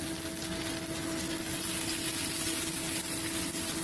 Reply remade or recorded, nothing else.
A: recorded